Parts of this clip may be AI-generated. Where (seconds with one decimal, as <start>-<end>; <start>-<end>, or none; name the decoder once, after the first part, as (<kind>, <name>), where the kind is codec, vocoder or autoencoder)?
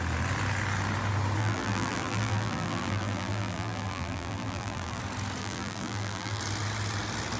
1.4-5.0 (vocoder, BigVGAN v2); 5.4-6.4